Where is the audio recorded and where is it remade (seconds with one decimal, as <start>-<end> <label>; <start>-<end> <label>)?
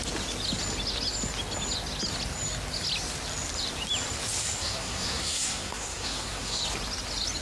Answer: 0.0-4.6 recorded; 4.6-6.6 remade; 6.6-7.4 recorded